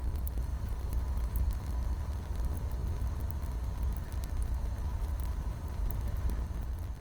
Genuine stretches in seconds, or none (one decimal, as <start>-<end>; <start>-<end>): 0.0-0.5; 1.6-4.9; 6.3-7.0